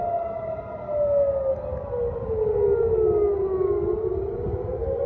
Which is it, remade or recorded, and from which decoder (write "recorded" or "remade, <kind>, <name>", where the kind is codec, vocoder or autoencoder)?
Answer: recorded